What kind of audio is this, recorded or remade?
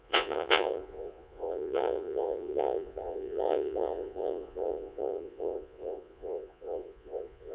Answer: remade